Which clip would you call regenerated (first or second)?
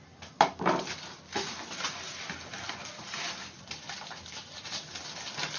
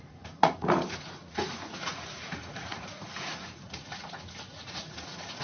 second